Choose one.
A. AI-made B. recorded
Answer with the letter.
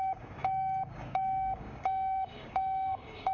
A